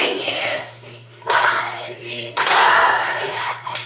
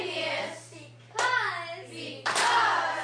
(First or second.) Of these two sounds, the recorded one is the second